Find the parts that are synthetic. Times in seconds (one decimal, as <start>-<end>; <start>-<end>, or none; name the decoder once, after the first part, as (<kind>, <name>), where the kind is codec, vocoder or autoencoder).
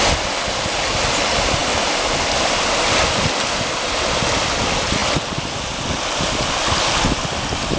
none